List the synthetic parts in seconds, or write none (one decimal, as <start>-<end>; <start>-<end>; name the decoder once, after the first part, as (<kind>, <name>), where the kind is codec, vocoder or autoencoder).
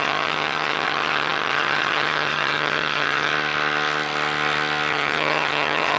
0.0-3.3 (vocoder, HiFi-GAN); 4.9-6.0